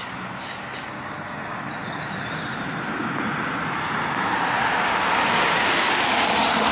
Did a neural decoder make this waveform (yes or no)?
no